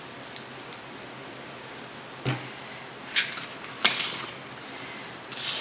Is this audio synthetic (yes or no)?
no